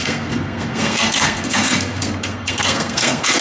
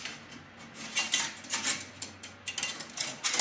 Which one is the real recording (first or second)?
second